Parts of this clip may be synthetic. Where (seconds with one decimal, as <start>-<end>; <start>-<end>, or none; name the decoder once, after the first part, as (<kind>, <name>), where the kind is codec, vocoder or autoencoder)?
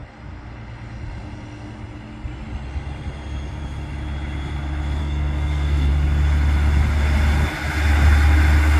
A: 5.0-5.9 (codec, SNAC)